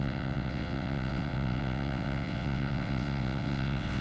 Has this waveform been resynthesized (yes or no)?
yes